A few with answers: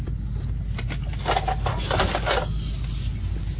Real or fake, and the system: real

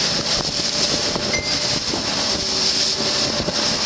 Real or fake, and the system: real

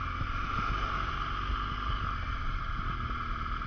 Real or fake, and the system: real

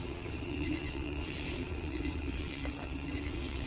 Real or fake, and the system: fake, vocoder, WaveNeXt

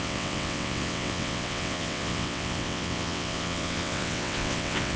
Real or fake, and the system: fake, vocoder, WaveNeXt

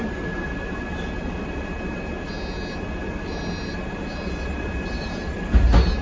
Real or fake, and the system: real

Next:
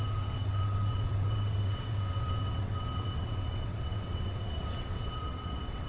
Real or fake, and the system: fake, vocoder, WaveNeXt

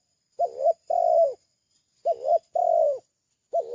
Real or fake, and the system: real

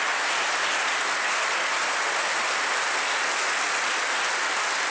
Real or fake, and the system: real